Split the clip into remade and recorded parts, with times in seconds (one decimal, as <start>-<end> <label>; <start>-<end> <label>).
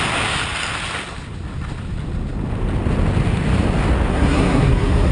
0.0-4.1 recorded; 4.1-5.1 remade